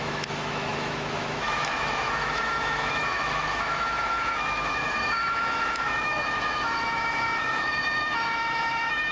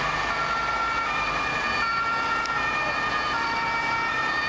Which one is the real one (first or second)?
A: second